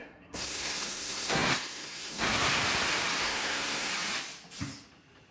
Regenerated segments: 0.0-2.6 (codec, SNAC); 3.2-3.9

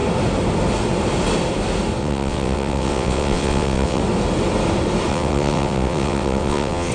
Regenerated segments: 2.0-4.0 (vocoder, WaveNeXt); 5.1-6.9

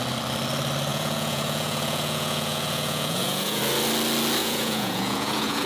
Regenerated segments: 0.9-3.6 (vocoder, Vocos); 4.4-5.7

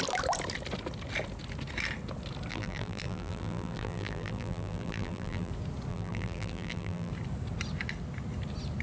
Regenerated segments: 2.5-5.5 (vocoder, BigVGAN v2); 5.9-7.1

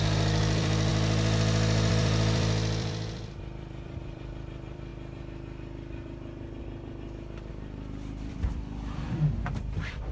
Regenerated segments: 0.0-0.9 (vocoder, BigVGAN v2); 1.9-4.9; 7.5-10.1